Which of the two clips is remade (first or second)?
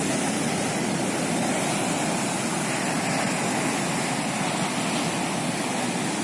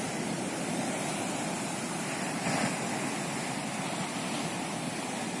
second